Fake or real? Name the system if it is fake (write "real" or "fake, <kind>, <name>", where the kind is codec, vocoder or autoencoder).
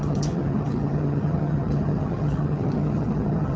fake, vocoder, HiFi-GAN